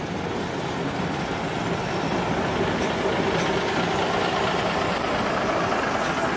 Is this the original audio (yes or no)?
yes